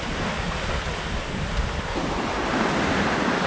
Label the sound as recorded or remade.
recorded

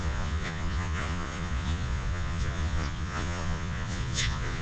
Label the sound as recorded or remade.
remade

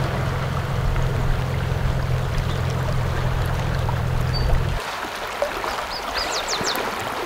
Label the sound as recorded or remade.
recorded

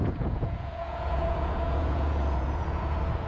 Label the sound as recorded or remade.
remade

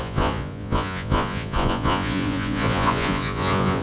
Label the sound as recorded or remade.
remade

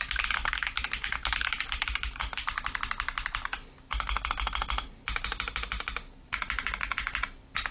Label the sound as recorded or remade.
recorded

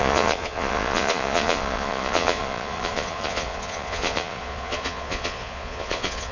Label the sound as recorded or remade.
remade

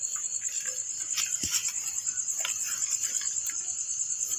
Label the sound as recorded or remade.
recorded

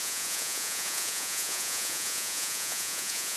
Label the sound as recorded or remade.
remade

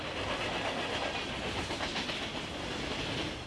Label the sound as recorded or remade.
recorded